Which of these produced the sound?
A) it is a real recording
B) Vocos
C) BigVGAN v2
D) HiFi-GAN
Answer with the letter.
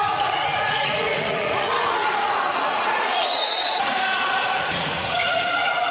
B